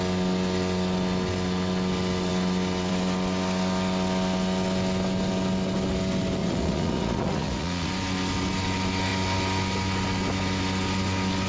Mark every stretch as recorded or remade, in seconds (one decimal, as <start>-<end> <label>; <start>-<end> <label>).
0.0-6.4 recorded; 6.4-7.9 remade; 7.9-11.5 recorded